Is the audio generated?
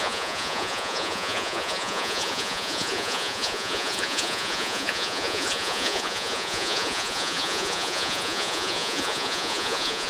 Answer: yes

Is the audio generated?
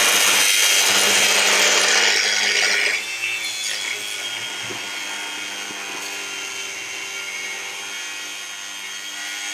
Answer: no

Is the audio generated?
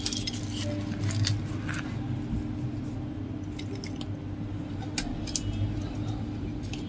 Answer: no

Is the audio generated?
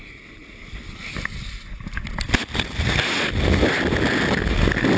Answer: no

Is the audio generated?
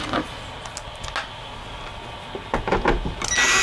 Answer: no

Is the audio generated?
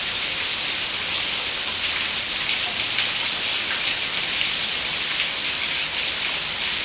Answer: no